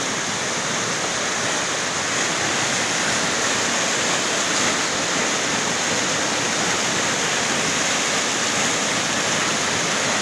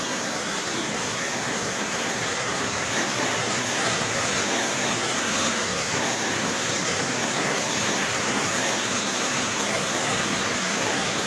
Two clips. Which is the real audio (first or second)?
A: first